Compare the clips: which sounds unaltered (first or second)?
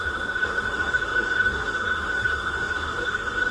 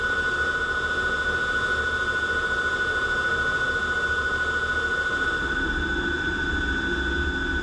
second